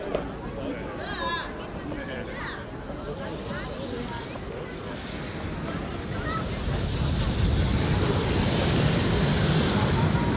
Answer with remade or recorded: recorded